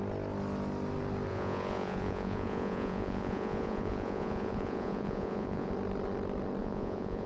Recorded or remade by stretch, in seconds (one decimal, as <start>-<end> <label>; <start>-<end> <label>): 0.0-1.3 recorded; 1.3-5.7 remade; 5.7-6.6 recorded; 6.6-7.3 remade